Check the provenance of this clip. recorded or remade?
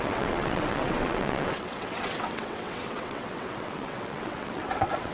remade